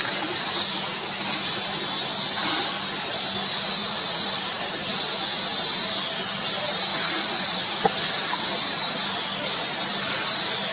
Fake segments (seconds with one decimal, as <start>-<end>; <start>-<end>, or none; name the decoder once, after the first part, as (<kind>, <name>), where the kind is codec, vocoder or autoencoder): 3.8-4.4 (vocoder, Vocos); 6.9-7.8